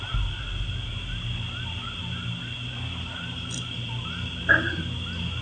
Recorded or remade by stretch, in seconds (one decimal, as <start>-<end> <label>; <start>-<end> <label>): 0.0-5.4 recorded